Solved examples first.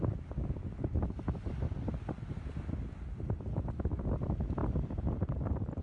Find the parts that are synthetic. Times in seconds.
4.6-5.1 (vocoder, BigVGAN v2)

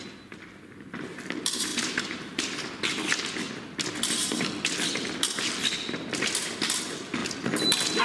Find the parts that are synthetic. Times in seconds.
1.7-2.4 (vocoder, BigVGAN v2)

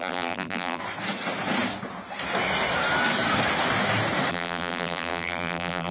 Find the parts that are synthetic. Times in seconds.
0.0-0.8 (vocoder, BigVGAN v2); 4.3-5.9

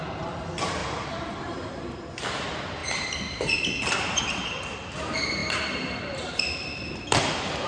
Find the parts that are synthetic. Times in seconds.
0.8-2.0 (vocoder, BigVGAN v2); 2.8-4.6; 5.4-7.0

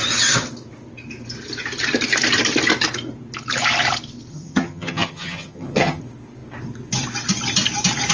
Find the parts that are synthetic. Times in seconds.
4.3-6.0 (vocoder, HiFi-GAN)

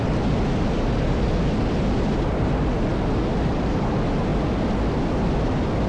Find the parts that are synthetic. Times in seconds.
none

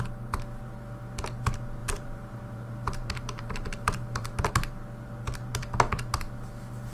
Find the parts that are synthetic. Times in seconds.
1.8-4.5 (vocoder, BigVGAN v2)

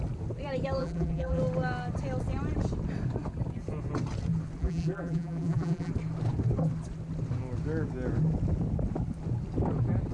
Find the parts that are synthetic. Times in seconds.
0.8-1.4 (vocoder, BigVGAN v2); 4.6-5.9